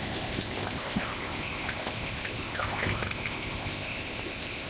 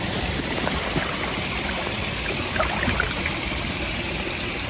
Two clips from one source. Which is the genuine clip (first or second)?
second